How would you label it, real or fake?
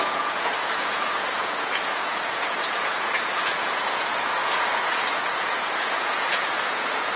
fake